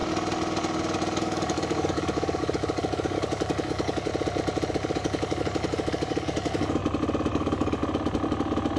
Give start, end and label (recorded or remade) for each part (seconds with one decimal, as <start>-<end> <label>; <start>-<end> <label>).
0.0-1.2 recorded; 1.2-4.1 remade; 4.1-4.7 recorded; 4.7-6.8 remade; 6.8-7.3 recorded; 7.3-7.8 remade; 7.8-8.8 recorded